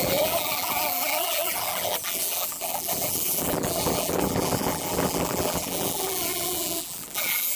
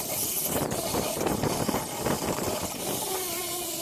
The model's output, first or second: first